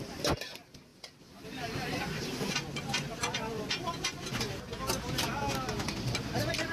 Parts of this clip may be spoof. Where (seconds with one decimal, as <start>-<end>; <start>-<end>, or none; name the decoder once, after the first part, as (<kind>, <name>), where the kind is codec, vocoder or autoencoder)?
none